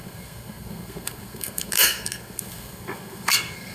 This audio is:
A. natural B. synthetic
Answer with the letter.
B